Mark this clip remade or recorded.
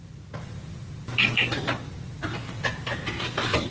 recorded